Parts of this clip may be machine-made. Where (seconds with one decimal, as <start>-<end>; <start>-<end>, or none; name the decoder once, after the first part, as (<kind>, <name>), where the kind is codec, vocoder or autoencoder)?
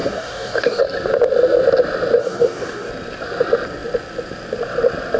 0.0-0.8 (codec, DAC); 2.2-2.9